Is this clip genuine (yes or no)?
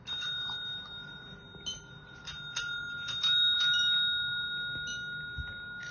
yes